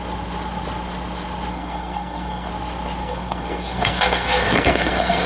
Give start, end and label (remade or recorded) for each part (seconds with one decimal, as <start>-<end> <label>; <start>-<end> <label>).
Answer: 0.0-1.5 recorded; 1.5-2.5 remade; 2.5-3.0 recorded; 3.0-5.3 remade